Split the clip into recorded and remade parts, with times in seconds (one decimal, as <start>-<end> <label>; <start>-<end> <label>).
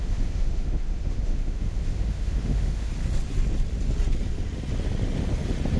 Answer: 0.0-2.9 remade; 2.9-5.8 recorded